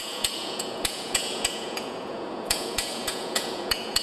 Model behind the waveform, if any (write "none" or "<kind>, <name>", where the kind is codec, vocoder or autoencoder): vocoder, Vocos